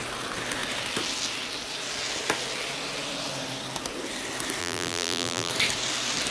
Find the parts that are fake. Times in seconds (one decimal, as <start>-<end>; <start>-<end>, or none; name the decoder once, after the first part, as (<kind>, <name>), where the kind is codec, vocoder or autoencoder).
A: 4.6-5.5 (vocoder, BigVGAN v2)